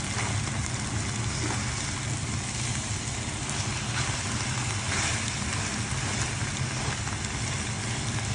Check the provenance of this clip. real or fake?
real